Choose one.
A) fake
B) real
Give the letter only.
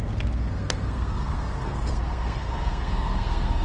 A